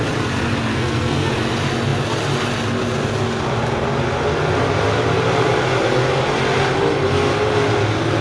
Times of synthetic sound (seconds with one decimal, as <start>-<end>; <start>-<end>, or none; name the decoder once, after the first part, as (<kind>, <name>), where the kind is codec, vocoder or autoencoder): 0.7-1.3 (codec, SNAC)